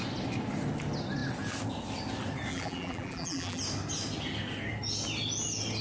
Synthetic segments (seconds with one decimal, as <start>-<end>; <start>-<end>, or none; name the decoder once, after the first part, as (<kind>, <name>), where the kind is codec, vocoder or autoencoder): 2.5-3.6 (vocoder, BigVGAN v2)